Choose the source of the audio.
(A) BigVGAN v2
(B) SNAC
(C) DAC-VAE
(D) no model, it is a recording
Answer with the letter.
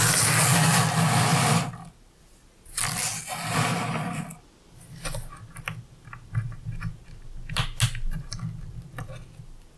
D